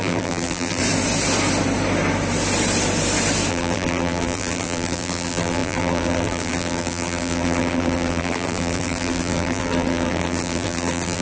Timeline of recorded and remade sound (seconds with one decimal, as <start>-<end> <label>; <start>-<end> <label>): 0.0-0.8 remade; 0.8-3.5 recorded; 3.5-11.2 remade